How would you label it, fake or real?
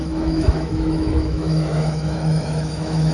fake